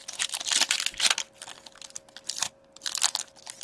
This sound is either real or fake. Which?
real